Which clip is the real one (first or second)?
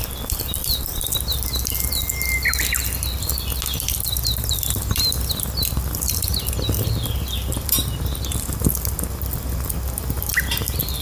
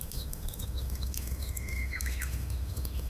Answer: first